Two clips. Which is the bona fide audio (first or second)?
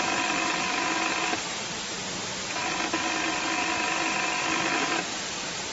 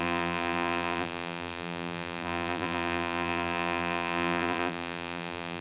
first